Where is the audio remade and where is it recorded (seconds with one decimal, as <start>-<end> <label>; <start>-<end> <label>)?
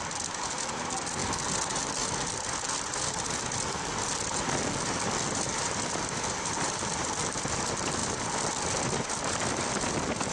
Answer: 0.0-1.2 recorded; 1.2-4.2 remade; 4.2-8.0 recorded; 8.0-10.3 remade